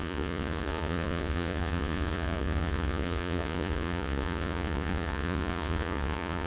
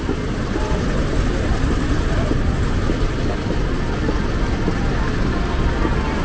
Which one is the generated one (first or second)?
first